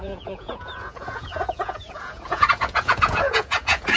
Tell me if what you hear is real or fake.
fake